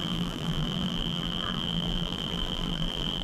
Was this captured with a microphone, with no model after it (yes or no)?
no